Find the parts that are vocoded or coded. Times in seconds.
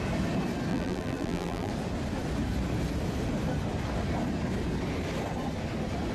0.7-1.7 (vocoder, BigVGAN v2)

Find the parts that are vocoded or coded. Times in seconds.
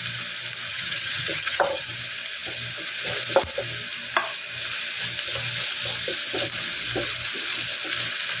0.7-1.9 (vocoder, HiFi-GAN)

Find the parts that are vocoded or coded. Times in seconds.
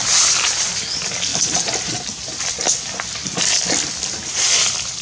none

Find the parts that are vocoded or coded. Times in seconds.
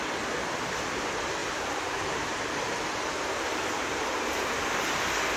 1.4-4.6 (vocoder, BigVGAN v2)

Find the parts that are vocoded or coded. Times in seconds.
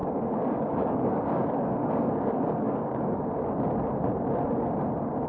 0.0-3.2 (codec, DAC)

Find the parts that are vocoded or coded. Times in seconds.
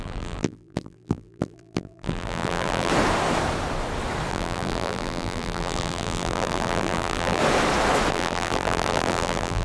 0.0-2.9 (vocoder, BigVGAN v2); 4.3-7.4; 8.1-9.6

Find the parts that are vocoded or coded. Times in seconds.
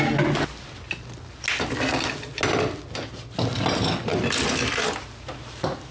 none